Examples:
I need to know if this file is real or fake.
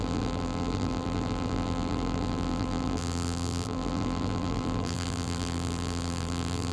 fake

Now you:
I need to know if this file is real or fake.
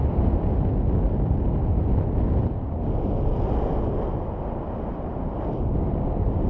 real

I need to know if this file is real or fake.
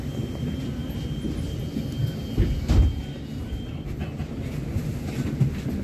real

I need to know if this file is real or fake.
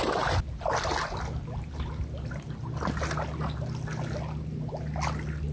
real